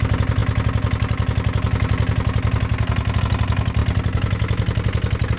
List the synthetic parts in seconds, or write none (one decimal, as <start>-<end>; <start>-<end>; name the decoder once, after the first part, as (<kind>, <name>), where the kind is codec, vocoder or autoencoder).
none